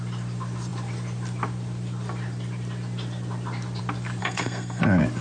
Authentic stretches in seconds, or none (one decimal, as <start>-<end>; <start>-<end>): 0.0-4.2; 4.8-5.2